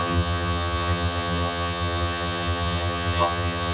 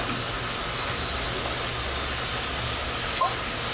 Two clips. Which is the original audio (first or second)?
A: second